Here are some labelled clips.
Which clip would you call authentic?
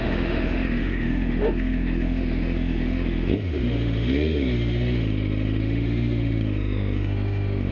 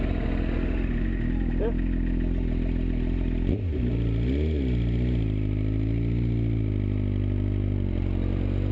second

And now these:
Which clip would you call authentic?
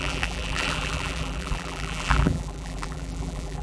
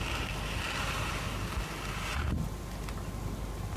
second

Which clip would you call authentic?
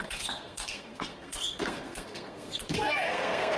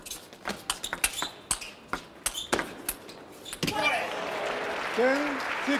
second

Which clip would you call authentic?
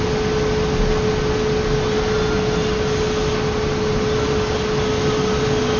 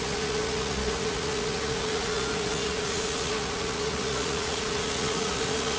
first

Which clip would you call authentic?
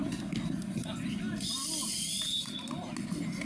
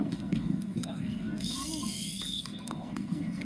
first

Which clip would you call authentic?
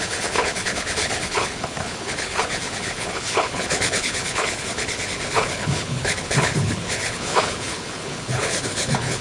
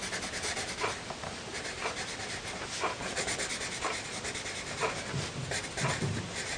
second